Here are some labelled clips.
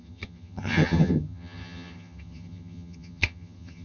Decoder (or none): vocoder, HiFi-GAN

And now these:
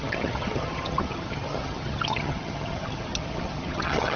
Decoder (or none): vocoder, HiFi-GAN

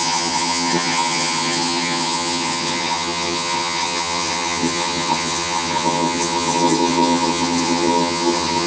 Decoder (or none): vocoder, HiFi-GAN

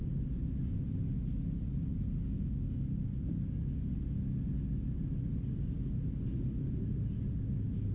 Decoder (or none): none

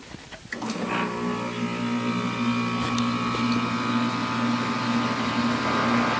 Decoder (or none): none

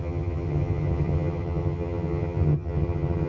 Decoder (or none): vocoder, HiFi-GAN